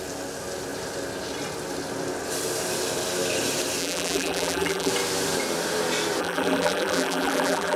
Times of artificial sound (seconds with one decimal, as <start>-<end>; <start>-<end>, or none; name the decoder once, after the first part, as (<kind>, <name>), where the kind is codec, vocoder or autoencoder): 3.8-4.9 (vocoder, BigVGAN v2); 6.2-7.8